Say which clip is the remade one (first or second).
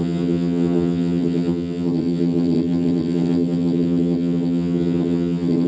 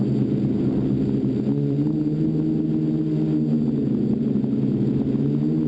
first